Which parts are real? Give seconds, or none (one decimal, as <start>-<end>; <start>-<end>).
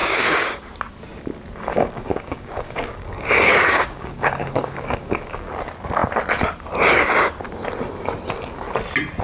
0.6-1.7; 5.5-9.2